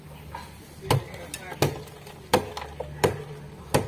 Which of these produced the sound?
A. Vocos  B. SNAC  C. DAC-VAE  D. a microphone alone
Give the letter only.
D